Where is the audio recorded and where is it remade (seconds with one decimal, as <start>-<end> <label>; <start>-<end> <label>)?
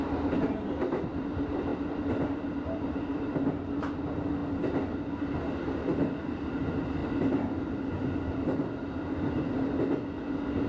0.0-10.7 recorded